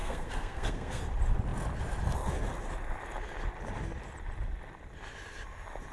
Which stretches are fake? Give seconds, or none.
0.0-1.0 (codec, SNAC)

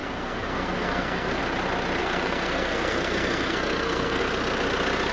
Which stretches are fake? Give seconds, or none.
0.0-1.4 (codec, SNAC); 2.0-4.2

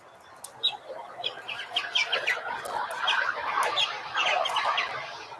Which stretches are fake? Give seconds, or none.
none